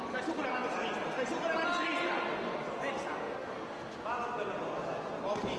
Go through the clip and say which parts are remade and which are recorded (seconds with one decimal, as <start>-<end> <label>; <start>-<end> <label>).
0.0-5.6 recorded